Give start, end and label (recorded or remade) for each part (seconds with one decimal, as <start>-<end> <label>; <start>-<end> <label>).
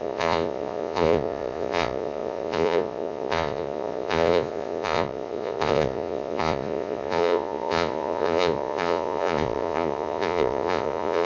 0.0-11.3 remade